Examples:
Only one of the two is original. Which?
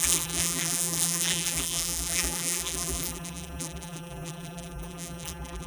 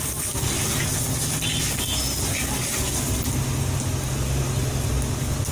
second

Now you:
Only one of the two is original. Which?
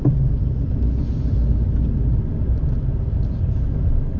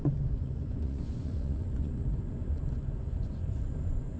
first